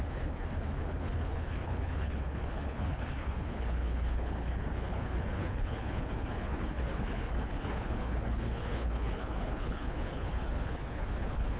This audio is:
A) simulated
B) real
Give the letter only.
A